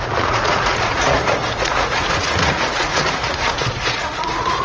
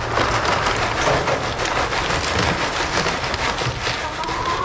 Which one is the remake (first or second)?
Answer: first